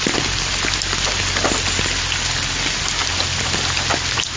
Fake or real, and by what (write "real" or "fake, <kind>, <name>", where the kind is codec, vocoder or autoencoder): real